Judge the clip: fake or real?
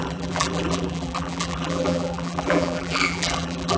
fake